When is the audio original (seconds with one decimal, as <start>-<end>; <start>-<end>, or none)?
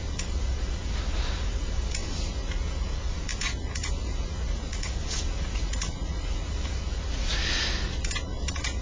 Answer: none